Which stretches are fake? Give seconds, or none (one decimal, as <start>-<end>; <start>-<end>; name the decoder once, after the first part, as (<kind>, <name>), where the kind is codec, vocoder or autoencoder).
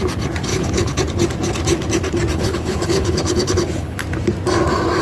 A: 0.5-1.0 (codec, HILCodec); 2.3-4.0